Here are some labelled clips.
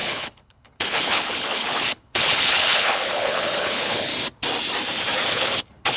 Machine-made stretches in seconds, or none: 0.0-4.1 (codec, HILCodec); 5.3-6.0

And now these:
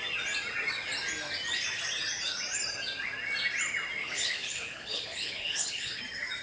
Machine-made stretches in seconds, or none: 4.0-6.0 (codec, HILCodec)

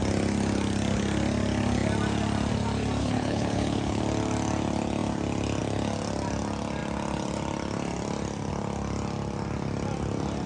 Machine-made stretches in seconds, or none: 3.0-4.0 (codec, HILCodec)

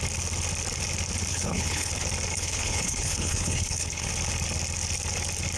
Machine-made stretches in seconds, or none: 1.3-1.9 (codec, HILCodec); 2.3-4.1